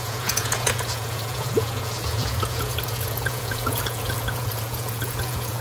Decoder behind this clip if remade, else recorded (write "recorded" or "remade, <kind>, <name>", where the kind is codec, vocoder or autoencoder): remade, vocoder, Vocos